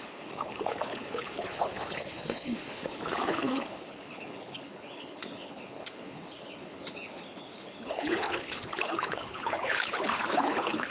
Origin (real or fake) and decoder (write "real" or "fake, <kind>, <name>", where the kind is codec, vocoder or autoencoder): fake, codec, HILCodec